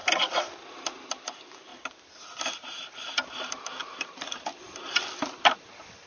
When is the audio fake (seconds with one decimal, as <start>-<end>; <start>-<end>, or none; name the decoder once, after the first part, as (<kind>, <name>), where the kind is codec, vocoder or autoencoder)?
0.0-0.5 (vocoder, BigVGAN v2); 1.7-2.5; 3.8-4.6

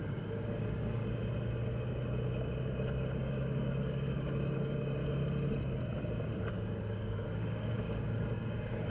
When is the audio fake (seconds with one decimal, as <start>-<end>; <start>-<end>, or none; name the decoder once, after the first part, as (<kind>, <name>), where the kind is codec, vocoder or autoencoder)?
0.0-1.0 (codec, DAC); 3.2-5.0; 6.5-8.9